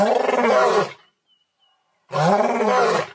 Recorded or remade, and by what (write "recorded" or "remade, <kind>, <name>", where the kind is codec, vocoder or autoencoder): recorded